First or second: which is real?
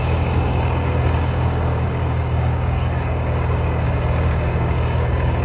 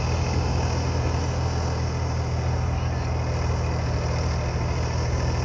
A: second